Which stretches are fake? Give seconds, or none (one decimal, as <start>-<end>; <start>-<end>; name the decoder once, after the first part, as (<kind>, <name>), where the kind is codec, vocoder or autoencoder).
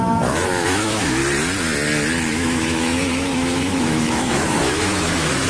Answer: 0.0-1.2 (autoencoder, DAC-VAE); 2.3-5.5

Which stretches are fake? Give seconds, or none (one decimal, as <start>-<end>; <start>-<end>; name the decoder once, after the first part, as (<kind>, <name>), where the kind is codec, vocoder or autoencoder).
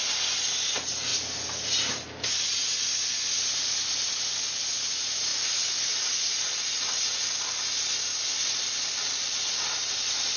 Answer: none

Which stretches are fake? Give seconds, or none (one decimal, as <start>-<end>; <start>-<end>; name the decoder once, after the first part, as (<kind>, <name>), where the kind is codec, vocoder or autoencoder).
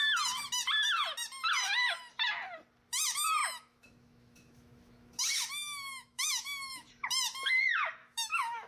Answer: 3.4-6.9 (autoencoder, DAC-VAE); 8.0-8.7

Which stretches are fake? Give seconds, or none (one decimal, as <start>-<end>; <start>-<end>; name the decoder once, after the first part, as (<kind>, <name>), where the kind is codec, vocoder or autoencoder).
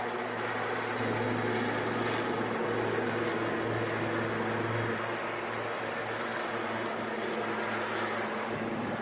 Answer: none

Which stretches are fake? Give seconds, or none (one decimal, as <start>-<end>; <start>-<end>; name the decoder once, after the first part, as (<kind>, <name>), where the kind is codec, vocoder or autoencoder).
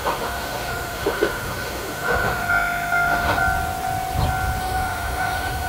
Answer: 0.0-3.4 (autoencoder, DAC-VAE); 4.6-5.7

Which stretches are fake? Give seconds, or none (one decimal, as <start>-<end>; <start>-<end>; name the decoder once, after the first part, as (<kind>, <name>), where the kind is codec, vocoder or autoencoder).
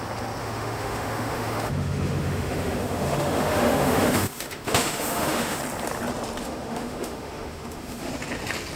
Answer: 0.4-5.6 (autoencoder, DAC-VAE); 6.4-8.1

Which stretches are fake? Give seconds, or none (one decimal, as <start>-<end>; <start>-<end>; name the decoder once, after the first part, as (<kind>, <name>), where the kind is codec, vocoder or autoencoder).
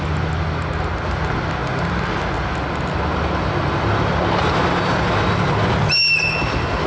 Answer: none